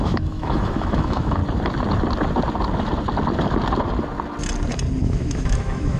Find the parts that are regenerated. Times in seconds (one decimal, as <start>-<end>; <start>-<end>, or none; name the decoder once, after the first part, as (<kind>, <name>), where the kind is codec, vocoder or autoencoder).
0.0-1.4 (autoencoder, DAC-VAE); 5.0-6.0